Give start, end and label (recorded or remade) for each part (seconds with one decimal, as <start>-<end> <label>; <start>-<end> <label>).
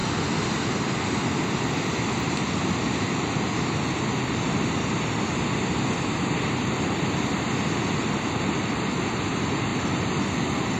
0.0-10.8 recorded